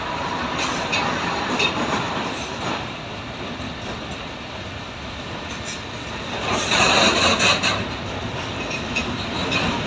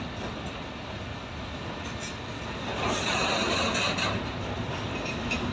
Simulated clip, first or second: first